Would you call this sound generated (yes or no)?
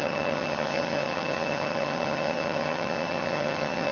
yes